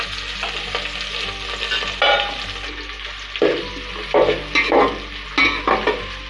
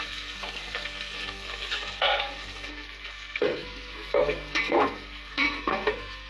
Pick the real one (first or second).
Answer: first